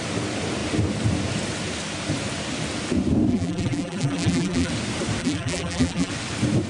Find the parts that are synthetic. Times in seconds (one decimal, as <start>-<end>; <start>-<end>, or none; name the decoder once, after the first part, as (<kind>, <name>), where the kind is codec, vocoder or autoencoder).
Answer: 3.3-4.7 (vocoder, BigVGAN v2); 5.2-6.1